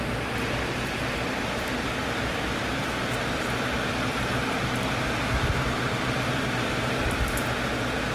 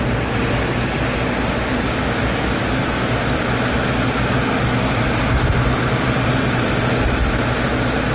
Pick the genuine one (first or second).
second